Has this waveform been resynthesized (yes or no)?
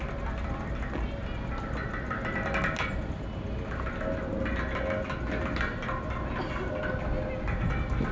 no